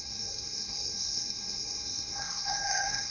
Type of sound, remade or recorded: remade